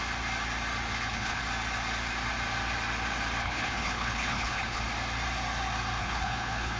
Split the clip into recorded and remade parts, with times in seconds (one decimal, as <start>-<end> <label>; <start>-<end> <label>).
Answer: 0.0-0.9 recorded; 0.9-1.4 remade; 1.4-3.4 recorded; 3.4-4.8 remade; 4.8-6.0 recorded; 6.0-6.8 remade